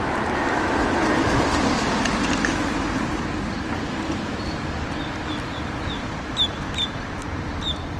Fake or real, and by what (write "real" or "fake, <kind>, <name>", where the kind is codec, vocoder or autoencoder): real